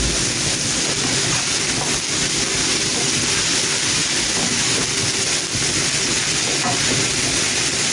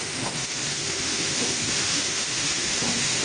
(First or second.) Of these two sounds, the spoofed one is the second